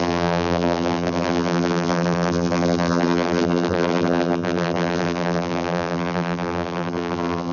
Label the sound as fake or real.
fake